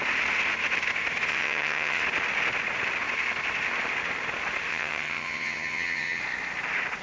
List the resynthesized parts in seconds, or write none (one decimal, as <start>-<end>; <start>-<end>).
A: 1.3-2.0; 4.7-6.2